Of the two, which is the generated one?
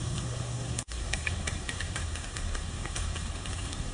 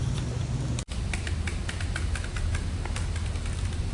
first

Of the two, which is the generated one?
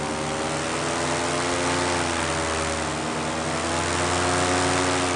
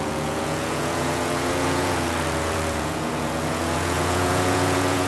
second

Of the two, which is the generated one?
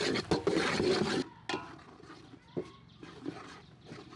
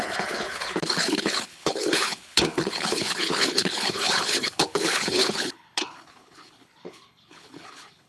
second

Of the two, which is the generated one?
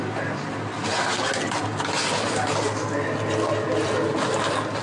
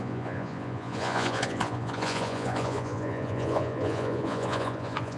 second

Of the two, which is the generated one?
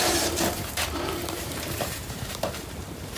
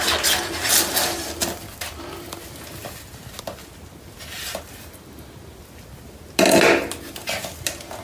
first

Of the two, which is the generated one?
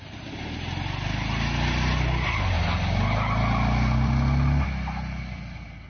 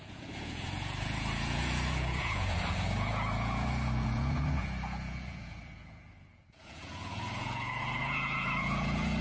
second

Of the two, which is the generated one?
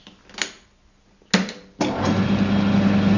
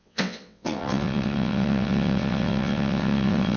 second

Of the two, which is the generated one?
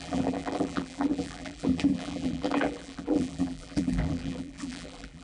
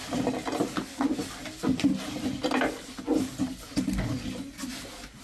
first